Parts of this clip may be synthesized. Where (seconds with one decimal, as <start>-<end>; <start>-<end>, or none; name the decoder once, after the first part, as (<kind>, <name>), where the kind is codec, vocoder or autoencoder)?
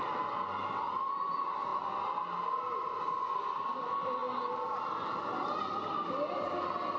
none